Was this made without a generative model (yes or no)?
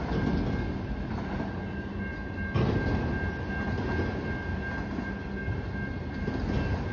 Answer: yes